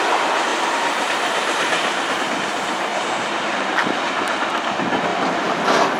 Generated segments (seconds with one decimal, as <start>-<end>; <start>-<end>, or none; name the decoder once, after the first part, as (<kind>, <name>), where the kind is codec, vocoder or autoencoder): 0.5-2.2 (vocoder, BigVGAN v2); 2.9-4.1; 5.1-5.6